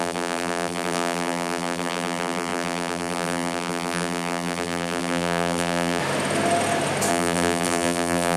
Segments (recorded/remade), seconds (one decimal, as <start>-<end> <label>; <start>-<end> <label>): 0.0-6.0 remade; 6.0-7.1 recorded; 7.1-8.4 remade